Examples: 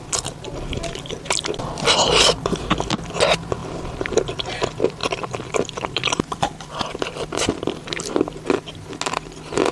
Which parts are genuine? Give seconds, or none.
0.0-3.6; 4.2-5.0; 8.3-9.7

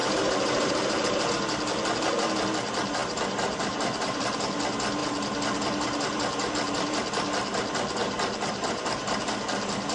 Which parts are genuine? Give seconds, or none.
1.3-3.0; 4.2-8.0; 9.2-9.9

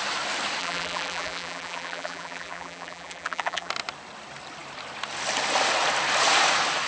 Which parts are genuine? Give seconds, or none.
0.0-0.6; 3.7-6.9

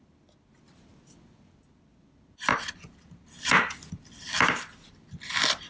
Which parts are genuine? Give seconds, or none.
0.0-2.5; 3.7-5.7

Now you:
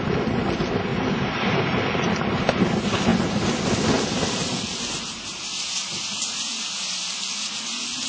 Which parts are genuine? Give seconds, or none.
0.0-0.9; 2.1-8.1

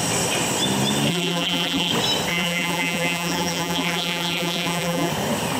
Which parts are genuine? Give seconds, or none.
0.0-1.1; 1.9-2.3; 5.1-5.6

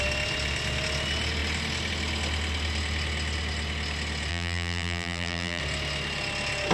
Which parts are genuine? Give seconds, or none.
0.0-4.3; 5.6-6.7